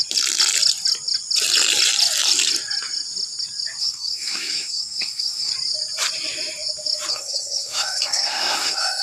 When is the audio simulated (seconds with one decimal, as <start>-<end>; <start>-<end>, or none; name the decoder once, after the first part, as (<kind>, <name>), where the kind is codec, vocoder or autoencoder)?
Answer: 3.8-5.5 (codec, SNAC); 7.1-9.0